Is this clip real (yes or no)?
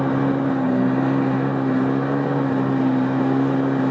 yes